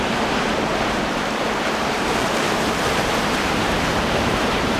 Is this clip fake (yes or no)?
yes